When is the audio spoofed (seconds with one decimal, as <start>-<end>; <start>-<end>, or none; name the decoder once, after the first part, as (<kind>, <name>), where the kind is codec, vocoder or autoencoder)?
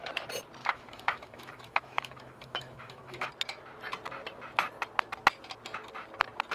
0.6-3.3 (autoencoder, DAC-VAE)